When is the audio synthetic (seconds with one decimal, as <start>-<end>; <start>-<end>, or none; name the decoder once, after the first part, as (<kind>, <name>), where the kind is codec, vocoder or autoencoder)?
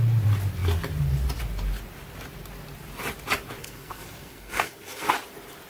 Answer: 3.6-5.1 (codec, SNAC)